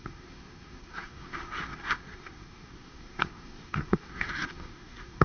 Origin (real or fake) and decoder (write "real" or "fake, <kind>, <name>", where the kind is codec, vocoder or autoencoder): fake, codec, SNAC